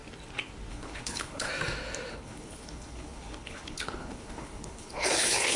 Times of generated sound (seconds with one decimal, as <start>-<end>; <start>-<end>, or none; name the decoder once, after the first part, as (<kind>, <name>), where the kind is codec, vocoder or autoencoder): 0.7-1.5 (codec, HILCodec); 2.1-5.6